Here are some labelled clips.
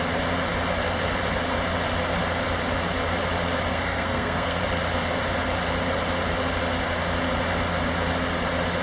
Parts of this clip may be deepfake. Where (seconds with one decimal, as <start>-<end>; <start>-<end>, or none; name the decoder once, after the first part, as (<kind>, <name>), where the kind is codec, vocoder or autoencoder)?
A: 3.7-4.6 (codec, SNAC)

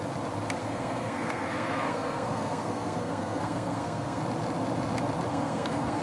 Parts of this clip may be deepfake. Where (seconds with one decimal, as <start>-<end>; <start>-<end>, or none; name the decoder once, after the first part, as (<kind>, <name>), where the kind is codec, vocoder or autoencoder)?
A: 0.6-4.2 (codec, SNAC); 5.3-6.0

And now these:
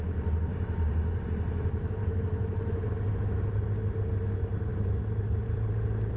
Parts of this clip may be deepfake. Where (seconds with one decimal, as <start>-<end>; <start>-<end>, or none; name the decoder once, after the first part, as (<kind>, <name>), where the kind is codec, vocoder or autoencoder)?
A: 0.5-2.9 (vocoder, BigVGAN v2); 4.7-6.2

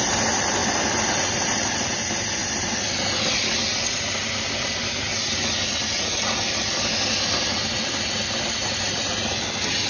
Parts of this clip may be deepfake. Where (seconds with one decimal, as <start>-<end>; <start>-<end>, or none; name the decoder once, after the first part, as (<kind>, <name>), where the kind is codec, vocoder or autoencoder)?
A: 8.6-9.1 (vocoder, BigVGAN v2)

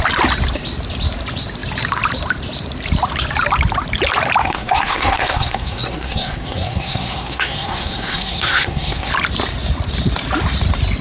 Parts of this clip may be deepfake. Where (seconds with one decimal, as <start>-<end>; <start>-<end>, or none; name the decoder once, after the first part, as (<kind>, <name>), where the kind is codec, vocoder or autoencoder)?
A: 4.4-9.1 (codec, SNAC)